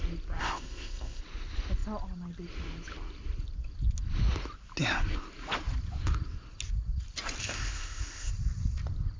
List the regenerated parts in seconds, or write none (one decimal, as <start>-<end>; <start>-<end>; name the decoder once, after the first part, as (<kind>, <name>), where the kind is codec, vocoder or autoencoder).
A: 0.4-1.2 (codec, ZipCodec); 7.4-8.3